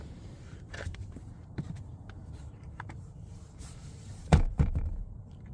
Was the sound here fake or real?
fake